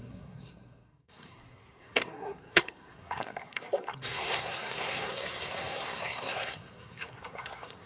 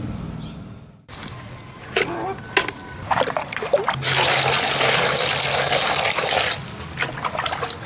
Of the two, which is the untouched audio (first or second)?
second